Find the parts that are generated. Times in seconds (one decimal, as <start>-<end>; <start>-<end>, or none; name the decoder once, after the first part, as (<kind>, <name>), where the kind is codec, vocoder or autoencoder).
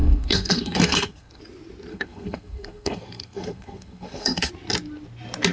0.0-1.4 (codec, SNAC); 1.9-4.5